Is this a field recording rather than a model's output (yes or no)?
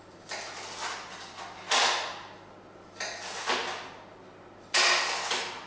yes